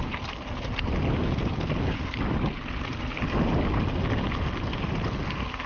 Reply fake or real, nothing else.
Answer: real